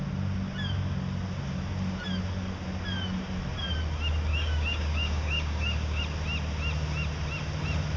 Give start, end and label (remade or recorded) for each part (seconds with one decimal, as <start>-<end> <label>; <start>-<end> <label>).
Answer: 0.0-4.3 recorded; 4.3-6.0 remade; 6.0-8.0 recorded